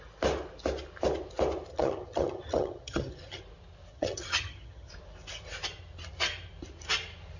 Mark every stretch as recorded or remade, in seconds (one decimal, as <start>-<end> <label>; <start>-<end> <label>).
0.0-1.7 recorded; 1.7-3.4 remade; 3.4-3.9 recorded; 3.9-4.9 remade; 4.9-7.4 recorded